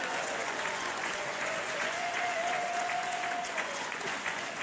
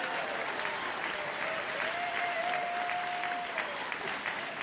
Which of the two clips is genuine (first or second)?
second